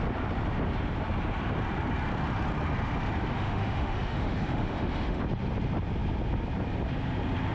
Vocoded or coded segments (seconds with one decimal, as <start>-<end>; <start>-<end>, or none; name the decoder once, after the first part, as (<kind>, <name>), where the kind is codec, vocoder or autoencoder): 3.3-5.2 (autoencoder, DAC-VAE)